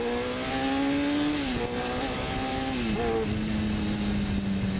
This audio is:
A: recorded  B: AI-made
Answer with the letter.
A